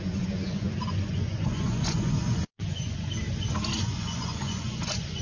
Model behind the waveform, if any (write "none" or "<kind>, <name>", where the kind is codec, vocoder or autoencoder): vocoder, Vocos